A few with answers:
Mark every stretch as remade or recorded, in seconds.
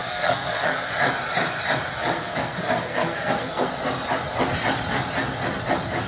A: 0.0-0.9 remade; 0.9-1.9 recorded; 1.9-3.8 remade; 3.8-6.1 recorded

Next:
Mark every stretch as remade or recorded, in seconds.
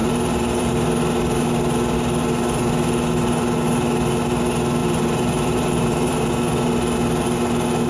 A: 0.0-0.7 remade; 0.7-4.8 recorded; 4.8-6.3 remade; 6.3-7.9 recorded